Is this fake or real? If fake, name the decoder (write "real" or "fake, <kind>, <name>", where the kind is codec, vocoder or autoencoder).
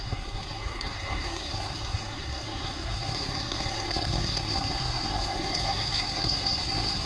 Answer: fake, codec, SNAC